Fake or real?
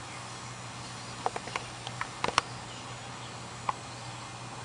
real